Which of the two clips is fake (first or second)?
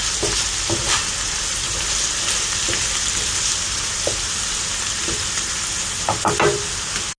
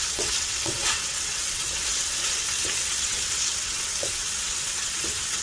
second